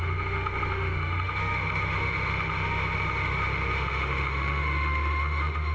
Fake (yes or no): yes